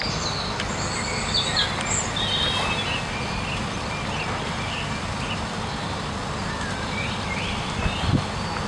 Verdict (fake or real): real